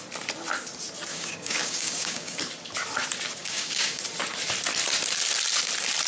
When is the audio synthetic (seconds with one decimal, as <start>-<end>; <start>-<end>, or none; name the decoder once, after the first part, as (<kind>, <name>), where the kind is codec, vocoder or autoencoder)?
1.1-2.4 (codec, DAC); 3.4-4.0